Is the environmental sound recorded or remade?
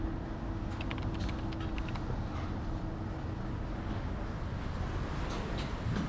recorded